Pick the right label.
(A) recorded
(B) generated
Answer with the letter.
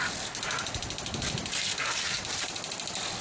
A